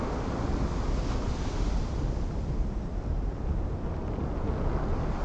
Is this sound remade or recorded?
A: recorded